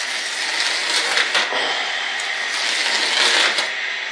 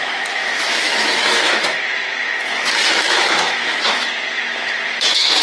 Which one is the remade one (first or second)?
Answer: second